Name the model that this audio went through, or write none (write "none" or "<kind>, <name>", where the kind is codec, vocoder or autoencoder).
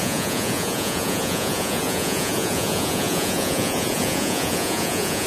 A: vocoder, Vocos